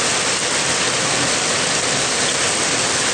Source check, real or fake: real